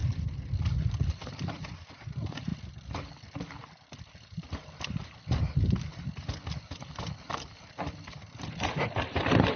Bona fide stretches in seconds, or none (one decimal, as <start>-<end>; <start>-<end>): 0.0-9.6